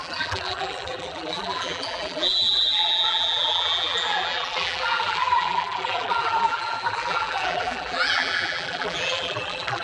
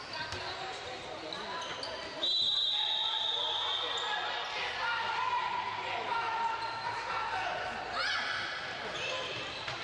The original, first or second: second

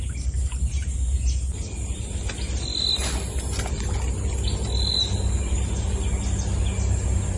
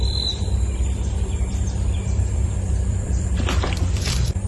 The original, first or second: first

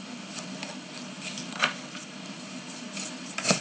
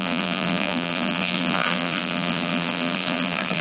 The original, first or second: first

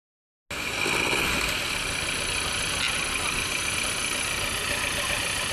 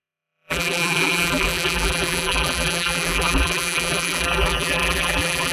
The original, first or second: first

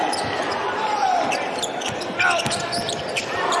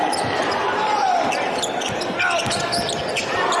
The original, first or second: second